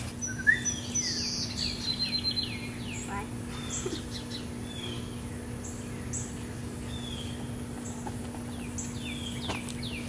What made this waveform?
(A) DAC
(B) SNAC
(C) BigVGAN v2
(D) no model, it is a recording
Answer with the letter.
D